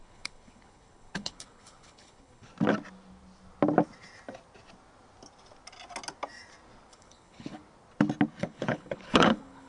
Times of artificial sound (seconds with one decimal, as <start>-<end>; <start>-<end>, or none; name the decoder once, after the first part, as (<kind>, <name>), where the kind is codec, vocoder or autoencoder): 0.0-2.5 (codec, HILCodec); 6.9-7.6; 8.4-9.7